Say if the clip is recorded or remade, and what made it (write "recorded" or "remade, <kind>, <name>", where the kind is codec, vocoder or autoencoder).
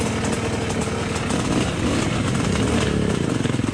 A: recorded